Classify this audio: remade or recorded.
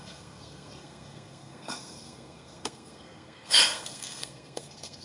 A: remade